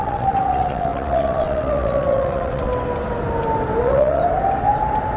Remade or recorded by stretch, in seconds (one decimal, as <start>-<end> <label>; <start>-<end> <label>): 0.0-2.7 remade; 2.7-3.8 recorded; 3.8-4.2 remade; 4.2-5.2 recorded